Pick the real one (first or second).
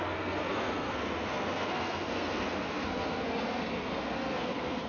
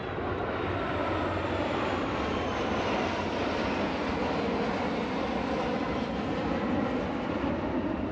second